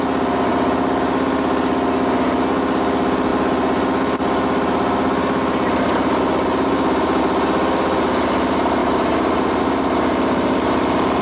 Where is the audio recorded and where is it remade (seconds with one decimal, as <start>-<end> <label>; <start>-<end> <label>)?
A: 0.0-8.8 recorded; 8.8-9.6 remade; 9.6-11.2 recorded

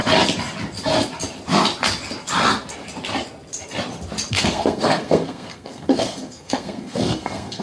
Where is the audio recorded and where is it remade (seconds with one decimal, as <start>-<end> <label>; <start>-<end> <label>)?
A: 0.0-4.3 recorded; 4.3-7.6 remade